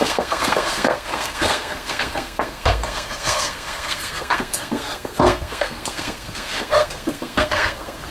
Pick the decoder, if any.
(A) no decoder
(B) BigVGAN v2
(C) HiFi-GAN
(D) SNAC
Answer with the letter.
D